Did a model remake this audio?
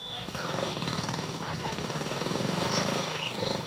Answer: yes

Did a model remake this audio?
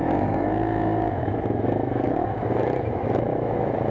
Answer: yes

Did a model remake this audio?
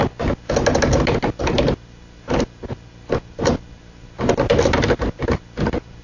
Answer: no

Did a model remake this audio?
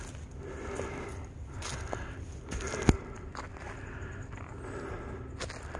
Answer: no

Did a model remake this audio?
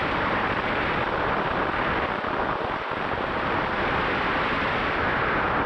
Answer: yes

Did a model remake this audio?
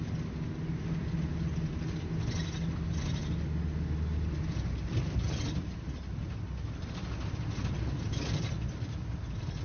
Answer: no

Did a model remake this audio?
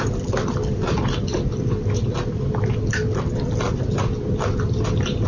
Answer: no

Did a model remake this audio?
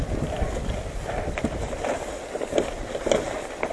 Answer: no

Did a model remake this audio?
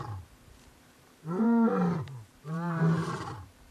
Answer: yes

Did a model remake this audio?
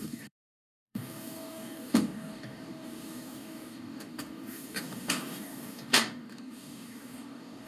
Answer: yes